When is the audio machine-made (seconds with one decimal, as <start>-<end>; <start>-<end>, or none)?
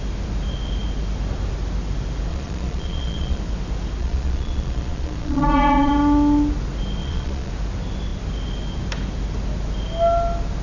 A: 2.3-3.4; 4.0-5.9; 7.0-7.5